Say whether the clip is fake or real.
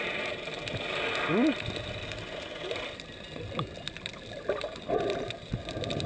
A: real